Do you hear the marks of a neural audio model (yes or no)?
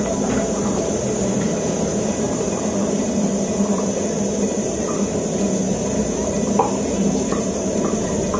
yes